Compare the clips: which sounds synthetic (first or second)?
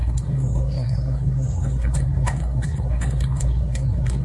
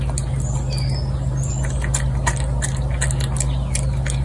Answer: first